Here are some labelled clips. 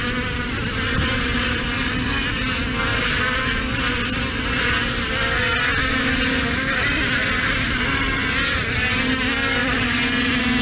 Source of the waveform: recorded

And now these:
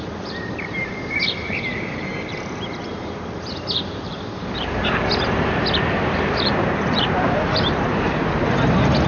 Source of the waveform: remade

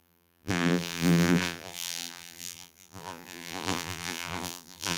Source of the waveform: remade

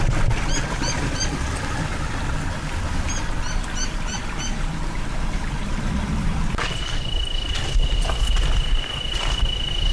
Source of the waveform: recorded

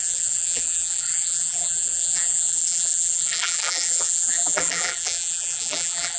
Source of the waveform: remade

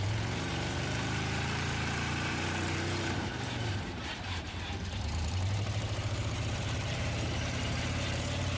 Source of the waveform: remade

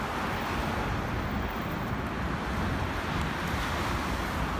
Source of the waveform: recorded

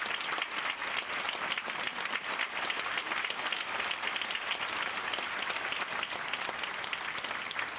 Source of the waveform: recorded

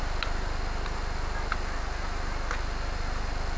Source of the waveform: recorded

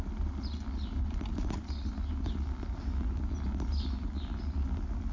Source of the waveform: recorded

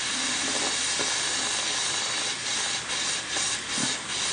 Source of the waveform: recorded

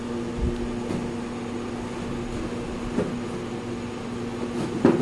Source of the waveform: recorded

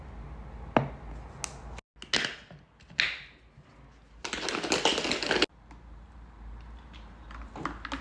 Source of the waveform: recorded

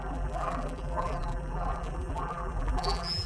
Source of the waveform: remade